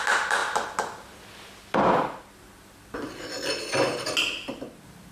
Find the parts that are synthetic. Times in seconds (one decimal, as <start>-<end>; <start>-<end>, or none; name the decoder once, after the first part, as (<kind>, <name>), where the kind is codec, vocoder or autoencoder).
none